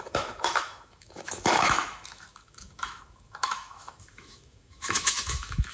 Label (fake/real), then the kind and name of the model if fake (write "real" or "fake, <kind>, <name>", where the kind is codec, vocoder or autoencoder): fake, autoencoder, DAC-VAE